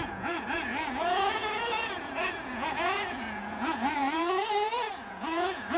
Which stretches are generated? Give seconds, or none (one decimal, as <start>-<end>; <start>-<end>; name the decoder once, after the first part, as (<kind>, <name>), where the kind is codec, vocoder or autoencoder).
0.0-5.8 (vocoder, Vocos)